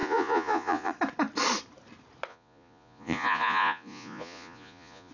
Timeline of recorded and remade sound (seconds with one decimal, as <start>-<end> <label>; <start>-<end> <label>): 0.0-0.9 remade; 0.9-2.3 recorded; 2.3-5.1 remade